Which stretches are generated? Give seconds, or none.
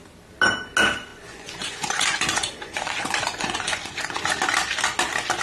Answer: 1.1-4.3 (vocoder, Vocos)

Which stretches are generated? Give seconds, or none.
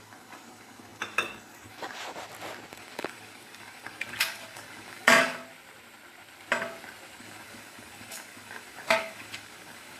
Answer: 0.0-2.0 (codec, DAC); 2.7-5.4; 7.2-10.0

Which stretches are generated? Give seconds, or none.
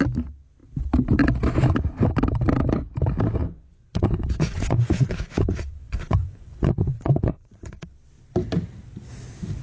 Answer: 3.4-7.8 (vocoder, Vocos)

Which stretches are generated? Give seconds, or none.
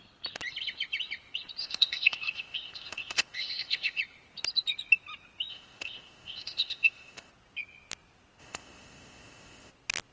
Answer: 1.6-4.0 (codec, ZipCodec); 5.5-7.3; 8.4-9.7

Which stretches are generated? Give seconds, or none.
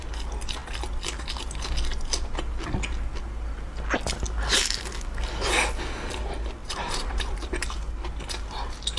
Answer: 6.6-7.5 (vocoder, BigVGAN v2)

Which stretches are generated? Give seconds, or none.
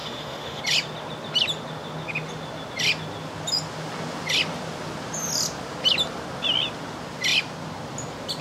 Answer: 0.0-0.6 (autoencoder, DAC-VAE)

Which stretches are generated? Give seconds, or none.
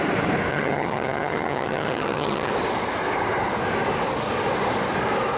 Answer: 0.5-2.5 (vocoder, HiFi-GAN)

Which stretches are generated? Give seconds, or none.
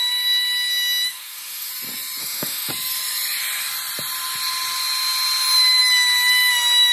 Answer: 1.1-1.7 (autoencoder, DAC-VAE); 2.2-2.7